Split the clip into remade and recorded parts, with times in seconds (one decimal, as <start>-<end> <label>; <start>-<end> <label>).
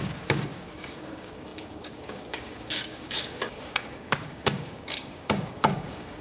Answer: 0.0-6.2 remade